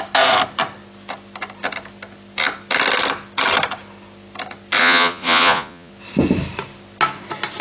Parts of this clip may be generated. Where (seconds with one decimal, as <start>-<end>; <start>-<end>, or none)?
4.8-5.9